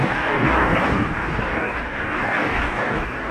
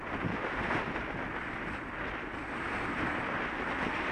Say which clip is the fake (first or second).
first